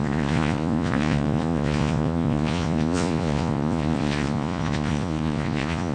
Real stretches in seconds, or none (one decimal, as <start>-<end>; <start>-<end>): none